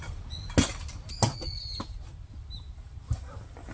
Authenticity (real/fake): real